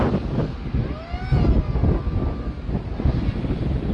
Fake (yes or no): no